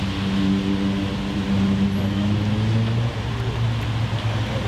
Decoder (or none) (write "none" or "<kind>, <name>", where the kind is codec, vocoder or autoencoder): none